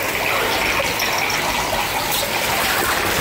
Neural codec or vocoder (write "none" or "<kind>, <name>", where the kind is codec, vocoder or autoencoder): none